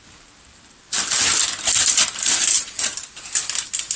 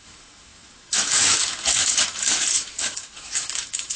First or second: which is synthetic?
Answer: second